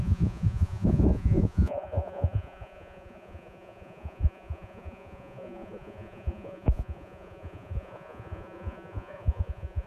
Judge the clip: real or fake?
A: fake